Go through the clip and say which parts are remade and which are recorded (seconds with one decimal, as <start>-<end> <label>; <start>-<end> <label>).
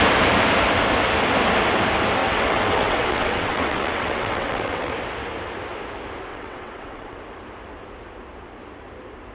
0.0-2.2 recorded; 2.2-4.9 remade; 4.9-6.3 recorded; 6.3-7.2 remade; 7.2-9.3 recorded